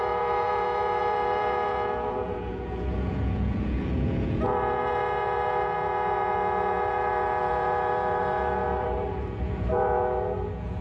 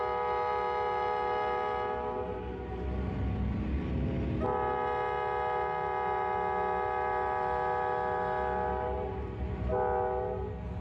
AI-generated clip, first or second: first